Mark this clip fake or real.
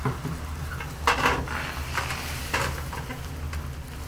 real